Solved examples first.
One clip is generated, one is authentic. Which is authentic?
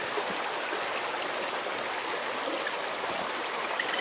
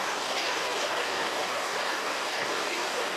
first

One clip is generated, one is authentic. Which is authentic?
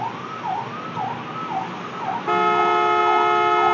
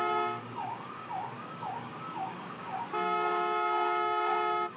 first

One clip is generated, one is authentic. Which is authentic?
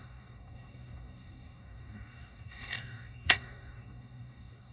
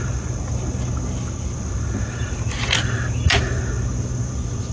second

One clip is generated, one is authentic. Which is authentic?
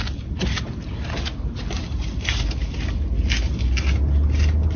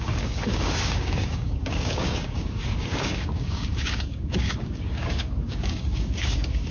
first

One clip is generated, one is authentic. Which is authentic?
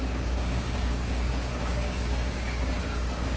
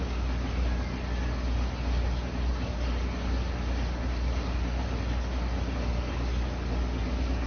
second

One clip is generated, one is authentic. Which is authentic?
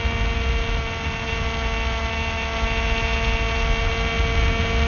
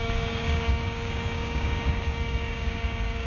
first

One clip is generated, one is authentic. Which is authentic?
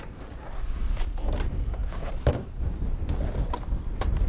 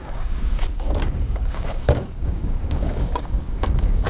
first